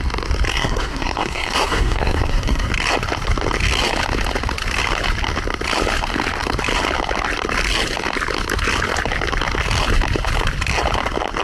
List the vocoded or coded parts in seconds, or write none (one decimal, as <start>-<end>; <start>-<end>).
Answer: 0.5-2.7